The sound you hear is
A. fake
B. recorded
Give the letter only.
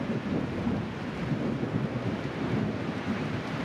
A